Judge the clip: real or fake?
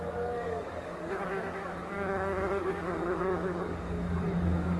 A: fake